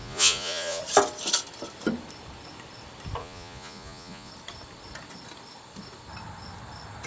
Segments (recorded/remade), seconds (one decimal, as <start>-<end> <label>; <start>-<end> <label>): 0.0-0.8 remade; 0.8-3.2 recorded; 3.2-4.3 remade; 4.3-7.1 recorded